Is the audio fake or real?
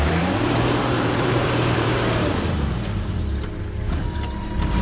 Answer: fake